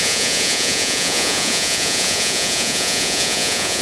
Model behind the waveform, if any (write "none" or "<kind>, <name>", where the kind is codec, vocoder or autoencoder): vocoder, Vocos